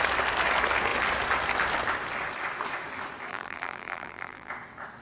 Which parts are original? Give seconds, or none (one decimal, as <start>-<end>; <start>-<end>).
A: 0.0-3.3; 4.5-5.0